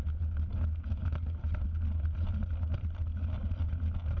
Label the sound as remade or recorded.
recorded